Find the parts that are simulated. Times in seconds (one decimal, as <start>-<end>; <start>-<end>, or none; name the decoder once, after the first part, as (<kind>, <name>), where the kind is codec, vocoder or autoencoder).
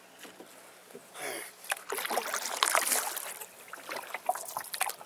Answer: 1.0-3.7 (vocoder, BigVGAN v2)